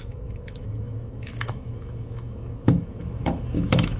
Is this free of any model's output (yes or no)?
no